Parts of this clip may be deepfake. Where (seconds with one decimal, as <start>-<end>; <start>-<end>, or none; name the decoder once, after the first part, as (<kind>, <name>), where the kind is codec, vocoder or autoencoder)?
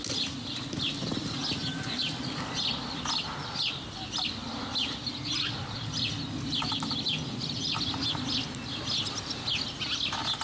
none